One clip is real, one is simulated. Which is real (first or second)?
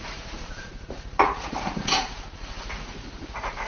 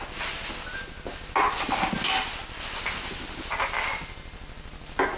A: second